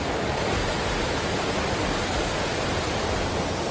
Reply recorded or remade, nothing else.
recorded